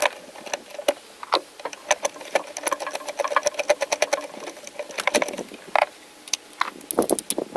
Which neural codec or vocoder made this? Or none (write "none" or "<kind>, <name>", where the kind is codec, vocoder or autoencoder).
none